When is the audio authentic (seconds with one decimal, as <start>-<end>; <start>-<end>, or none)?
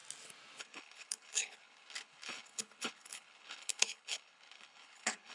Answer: 0.0-0.6